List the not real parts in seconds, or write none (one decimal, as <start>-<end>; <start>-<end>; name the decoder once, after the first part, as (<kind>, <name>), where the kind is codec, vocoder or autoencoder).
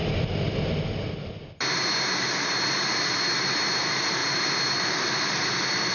3.4-4.2 (vocoder, BigVGAN v2); 4.7-5.9